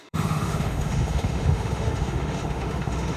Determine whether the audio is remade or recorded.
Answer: remade